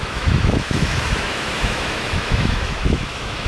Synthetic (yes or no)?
yes